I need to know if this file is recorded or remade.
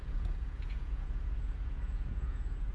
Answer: remade